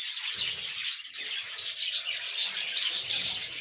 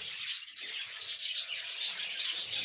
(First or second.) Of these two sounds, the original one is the first